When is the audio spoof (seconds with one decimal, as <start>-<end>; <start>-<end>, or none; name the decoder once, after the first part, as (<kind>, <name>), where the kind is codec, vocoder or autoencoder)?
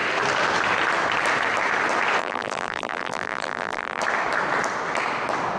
2.2-4.0 (vocoder, BigVGAN v2)